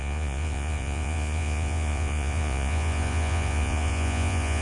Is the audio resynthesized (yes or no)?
yes